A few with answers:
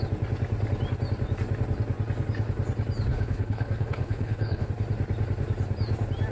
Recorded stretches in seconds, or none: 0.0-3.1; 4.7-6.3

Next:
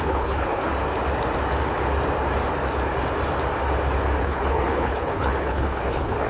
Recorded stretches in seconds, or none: 0.7-4.2

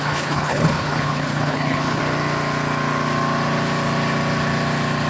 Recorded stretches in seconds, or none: 2.0-5.1

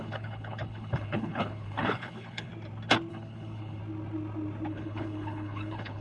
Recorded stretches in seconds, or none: 2.5-3.1; 3.8-4.7

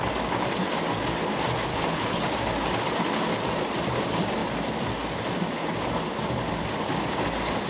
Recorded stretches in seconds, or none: 0.0-1.7; 2.2-7.7

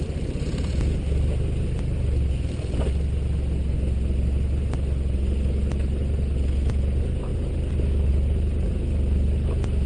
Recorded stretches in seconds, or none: 0.0-9.9

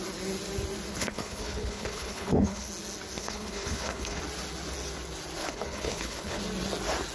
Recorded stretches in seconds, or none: 0.0-0.9; 2.7-3.2; 4.2-5.4; 6.4-7.1